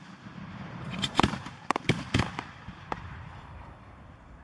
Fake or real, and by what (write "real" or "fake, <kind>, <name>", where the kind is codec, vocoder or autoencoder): fake, vocoder, BigVGAN v2